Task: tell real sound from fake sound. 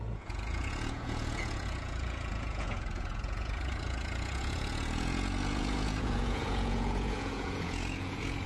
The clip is fake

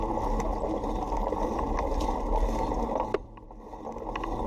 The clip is real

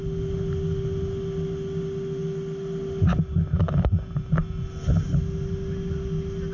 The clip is real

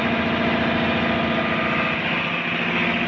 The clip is real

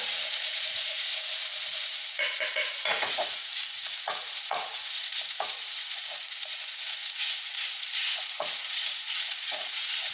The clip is fake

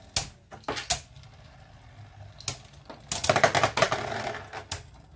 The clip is real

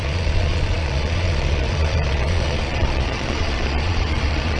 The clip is fake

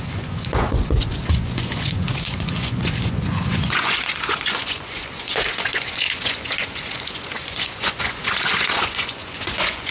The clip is fake